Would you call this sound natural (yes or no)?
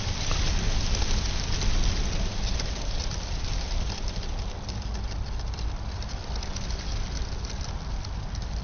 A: yes